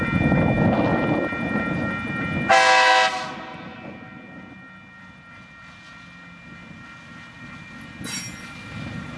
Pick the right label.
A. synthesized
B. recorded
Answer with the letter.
B